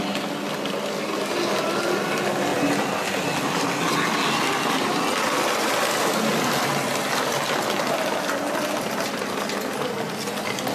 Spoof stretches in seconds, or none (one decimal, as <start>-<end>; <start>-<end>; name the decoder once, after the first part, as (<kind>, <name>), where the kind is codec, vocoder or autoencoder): none